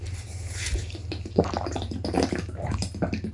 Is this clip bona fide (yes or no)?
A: no